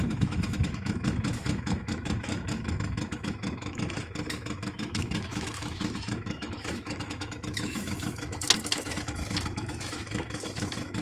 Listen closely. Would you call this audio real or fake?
fake